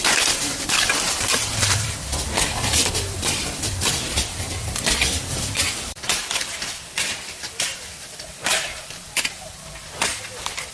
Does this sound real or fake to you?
fake